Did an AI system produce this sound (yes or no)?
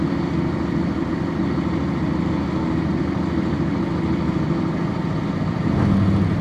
no